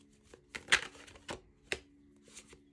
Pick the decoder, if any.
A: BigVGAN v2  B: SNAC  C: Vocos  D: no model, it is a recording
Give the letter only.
D